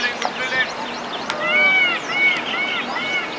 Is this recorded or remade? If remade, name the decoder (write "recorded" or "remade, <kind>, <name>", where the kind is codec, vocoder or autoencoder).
recorded